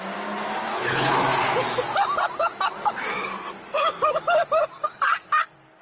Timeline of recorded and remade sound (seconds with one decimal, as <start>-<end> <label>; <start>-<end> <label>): 0.0-0.7 recorded; 0.7-1.2 remade; 1.2-5.8 recorded